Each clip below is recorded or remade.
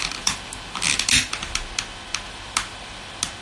recorded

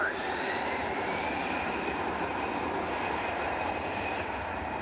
remade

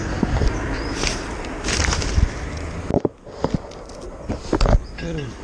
recorded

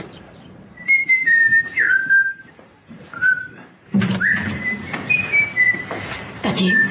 remade